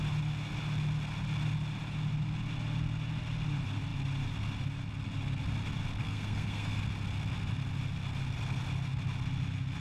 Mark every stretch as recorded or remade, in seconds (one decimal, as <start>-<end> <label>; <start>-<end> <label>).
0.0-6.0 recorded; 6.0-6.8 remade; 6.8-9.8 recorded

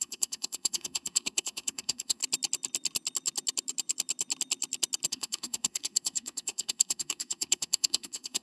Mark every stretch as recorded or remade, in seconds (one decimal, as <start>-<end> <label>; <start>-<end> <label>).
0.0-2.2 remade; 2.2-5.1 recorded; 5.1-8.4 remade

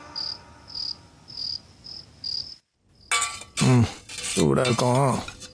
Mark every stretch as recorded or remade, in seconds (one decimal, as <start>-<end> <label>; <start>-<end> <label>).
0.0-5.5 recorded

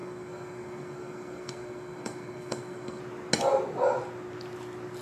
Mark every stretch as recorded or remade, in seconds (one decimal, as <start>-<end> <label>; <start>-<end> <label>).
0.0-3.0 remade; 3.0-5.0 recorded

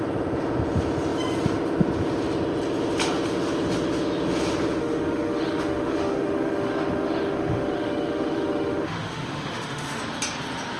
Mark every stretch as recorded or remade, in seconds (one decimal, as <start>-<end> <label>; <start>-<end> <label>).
0.0-4.8 recorded; 4.8-10.0 remade; 10.0-10.8 recorded

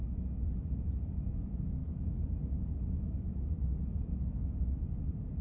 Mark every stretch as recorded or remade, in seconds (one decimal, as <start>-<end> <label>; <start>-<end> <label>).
0.0-1.8 recorded; 1.8-5.0 remade; 5.0-5.4 recorded